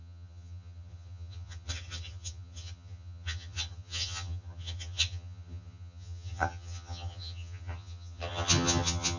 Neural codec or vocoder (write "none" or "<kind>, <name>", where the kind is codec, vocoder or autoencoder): vocoder, HiFi-GAN